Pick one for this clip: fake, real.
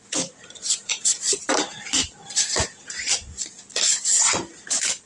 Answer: real